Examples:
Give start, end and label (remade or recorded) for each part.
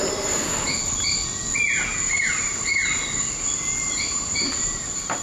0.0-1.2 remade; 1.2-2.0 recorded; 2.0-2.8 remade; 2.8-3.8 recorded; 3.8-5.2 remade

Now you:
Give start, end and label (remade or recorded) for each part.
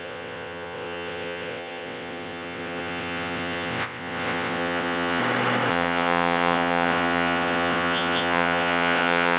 0.0-5.2 remade; 5.2-5.7 recorded; 5.7-9.4 remade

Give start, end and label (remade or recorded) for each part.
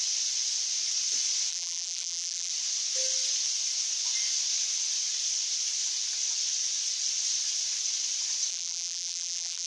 0.0-1.5 recorded; 1.5-2.5 remade; 2.5-8.5 recorded; 8.5-9.7 remade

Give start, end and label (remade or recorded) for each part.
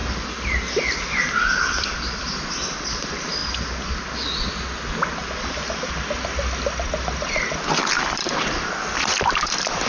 0.0-3.4 remade; 3.4-7.8 recorded; 7.8-9.9 remade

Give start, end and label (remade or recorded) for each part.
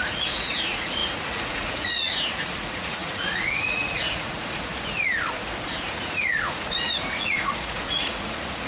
0.0-4.7 remade; 4.7-5.9 recorded; 5.9-8.7 remade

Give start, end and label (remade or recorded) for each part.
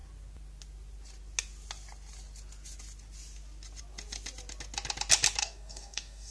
0.0-5.4 recorded; 5.4-6.3 remade